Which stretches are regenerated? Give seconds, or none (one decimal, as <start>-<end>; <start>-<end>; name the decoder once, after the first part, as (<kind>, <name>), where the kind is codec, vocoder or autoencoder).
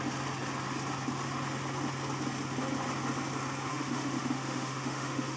3.7-5.4 (autoencoder, DAC-VAE)